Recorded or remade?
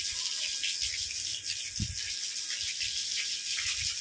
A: recorded